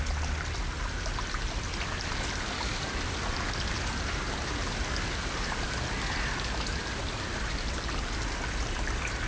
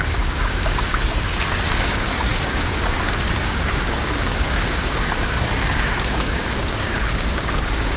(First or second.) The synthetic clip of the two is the second